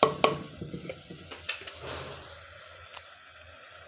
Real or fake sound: real